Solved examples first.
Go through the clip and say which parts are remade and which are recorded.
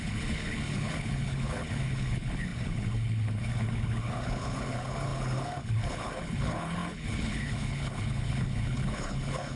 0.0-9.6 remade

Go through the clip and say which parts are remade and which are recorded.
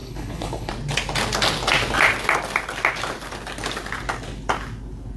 0.0-0.7 remade; 0.7-5.2 recorded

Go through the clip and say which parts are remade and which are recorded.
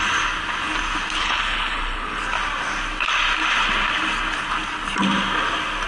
0.0-1.2 recorded; 1.2-2.2 remade; 2.2-5.9 recorded